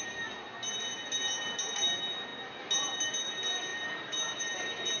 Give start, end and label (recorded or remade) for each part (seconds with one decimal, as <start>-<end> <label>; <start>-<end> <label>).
0.0-5.0 recorded